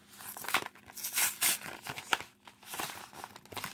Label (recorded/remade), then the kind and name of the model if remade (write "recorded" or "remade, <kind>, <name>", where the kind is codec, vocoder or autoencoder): recorded